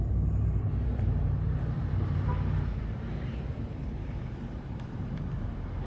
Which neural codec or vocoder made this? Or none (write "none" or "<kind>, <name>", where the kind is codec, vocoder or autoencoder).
vocoder, BigVGAN v2